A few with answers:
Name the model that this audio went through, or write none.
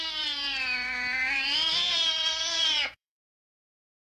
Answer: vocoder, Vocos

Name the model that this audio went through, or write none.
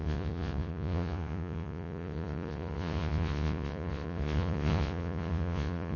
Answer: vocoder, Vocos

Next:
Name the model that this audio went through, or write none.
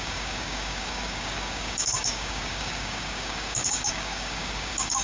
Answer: codec, DAC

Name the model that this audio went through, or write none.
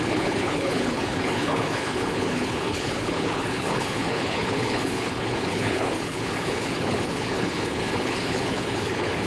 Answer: codec, HILCodec